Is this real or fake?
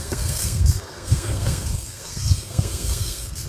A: fake